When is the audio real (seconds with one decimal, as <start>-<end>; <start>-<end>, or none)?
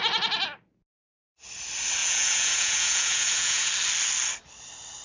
0.0-2.0; 3.7-5.0